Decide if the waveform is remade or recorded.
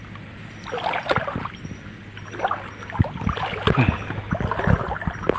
recorded